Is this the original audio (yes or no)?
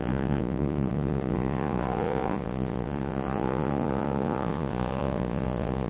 no